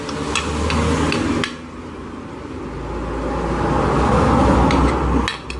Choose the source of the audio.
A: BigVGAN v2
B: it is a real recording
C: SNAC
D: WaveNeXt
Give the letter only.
B